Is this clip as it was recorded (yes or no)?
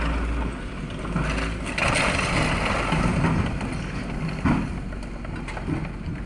yes